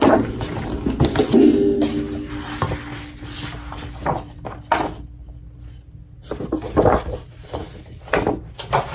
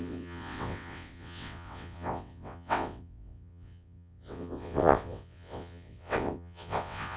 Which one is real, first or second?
first